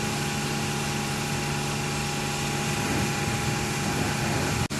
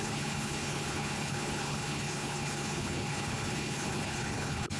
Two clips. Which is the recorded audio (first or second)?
first